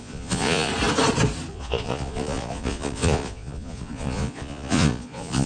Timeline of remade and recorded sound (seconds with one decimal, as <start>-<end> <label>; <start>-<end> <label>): 0.0-0.7 remade; 0.7-1.5 recorded; 1.5-5.5 remade